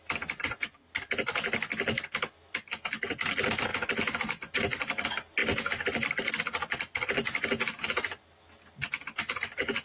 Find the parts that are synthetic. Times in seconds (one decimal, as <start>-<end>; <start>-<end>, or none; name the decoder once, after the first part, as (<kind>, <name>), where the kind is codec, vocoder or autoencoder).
none